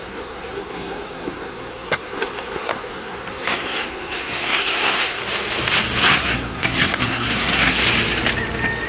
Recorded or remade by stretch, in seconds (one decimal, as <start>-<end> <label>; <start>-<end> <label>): 0.0-5.2 remade; 5.2-6.0 recorded; 6.0-7.8 remade; 7.8-8.9 recorded